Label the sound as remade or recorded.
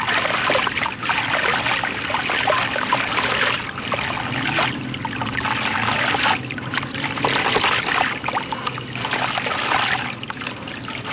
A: recorded